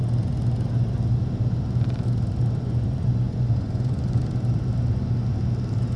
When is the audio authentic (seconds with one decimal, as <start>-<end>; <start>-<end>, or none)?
0.0-2.6; 4.2-6.0